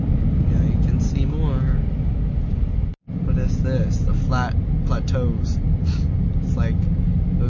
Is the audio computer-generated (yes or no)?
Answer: no